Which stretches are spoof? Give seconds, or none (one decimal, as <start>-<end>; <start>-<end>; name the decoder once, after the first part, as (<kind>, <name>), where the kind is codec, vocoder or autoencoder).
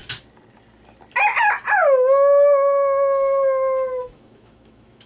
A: 1.8-5.1 (autoencoder, DAC-VAE)